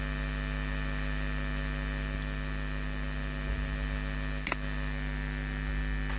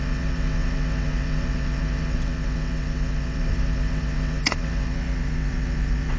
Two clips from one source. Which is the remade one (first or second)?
second